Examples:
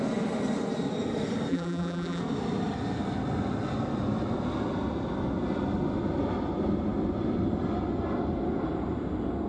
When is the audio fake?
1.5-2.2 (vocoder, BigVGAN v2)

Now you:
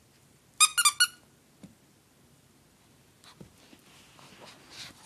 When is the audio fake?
none

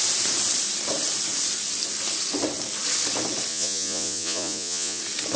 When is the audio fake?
3.5-5.0 (vocoder, Vocos)

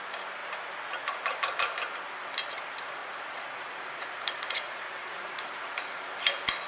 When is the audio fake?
3.0-6.0 (vocoder, Vocos)

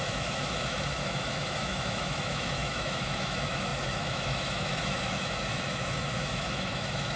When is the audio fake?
0.0-7.2 (autoencoder, DAC-VAE)